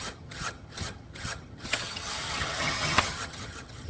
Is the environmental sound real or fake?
fake